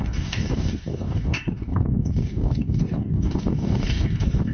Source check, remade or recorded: remade